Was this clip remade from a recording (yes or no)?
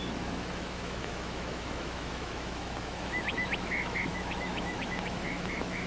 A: yes